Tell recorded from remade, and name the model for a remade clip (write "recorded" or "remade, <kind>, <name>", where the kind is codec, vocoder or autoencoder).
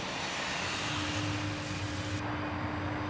recorded